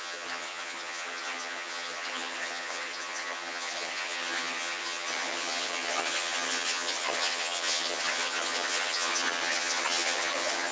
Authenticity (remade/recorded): remade